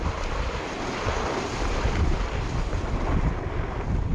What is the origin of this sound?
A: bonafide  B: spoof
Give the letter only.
A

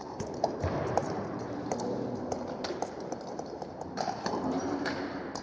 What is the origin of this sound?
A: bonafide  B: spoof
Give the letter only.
B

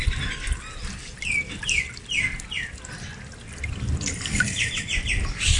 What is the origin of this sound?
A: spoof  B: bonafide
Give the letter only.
B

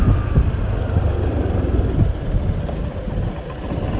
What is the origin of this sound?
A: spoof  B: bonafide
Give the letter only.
B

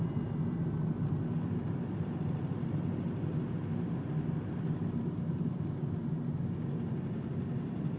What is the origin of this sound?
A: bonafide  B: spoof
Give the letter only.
A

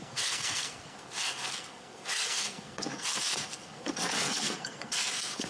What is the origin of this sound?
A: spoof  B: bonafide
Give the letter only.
A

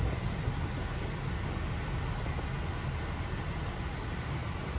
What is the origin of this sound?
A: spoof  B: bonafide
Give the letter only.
B